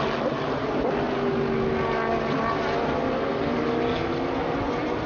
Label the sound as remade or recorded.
recorded